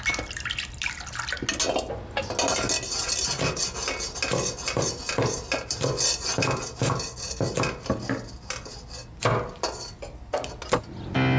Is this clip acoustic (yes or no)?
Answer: yes